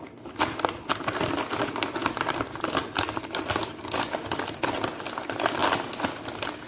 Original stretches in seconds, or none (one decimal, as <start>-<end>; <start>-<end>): 0.0-6.7